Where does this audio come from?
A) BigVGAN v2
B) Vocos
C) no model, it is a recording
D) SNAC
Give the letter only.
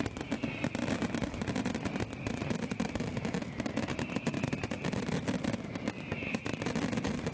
C